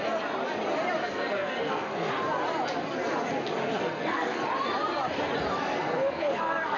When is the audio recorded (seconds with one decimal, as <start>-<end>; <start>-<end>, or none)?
0.0-1.0; 2.1-3.7; 4.4-5.6